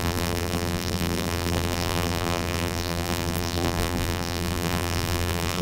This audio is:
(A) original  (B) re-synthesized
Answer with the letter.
B